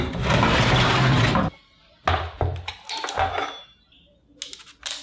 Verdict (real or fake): real